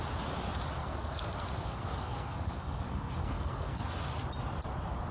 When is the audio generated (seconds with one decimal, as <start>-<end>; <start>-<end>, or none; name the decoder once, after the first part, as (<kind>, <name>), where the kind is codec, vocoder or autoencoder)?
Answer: 0.8-3.9 (codec, SNAC)